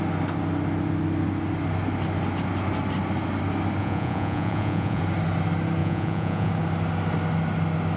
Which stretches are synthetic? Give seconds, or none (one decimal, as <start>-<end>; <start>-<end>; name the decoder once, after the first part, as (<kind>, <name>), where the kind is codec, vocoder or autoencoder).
3.8-5.0 (vocoder, Vocos); 5.8-6.5